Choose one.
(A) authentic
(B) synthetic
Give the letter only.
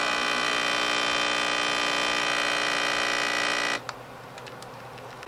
A